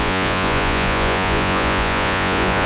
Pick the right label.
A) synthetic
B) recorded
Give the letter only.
A